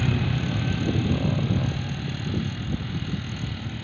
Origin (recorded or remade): recorded